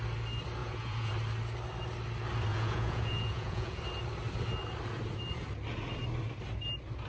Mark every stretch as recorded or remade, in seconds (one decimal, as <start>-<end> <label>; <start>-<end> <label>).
0.0-0.6 recorded; 0.6-1.1 remade; 1.1-2.5 recorded; 2.5-3.8 remade; 3.8-7.1 recorded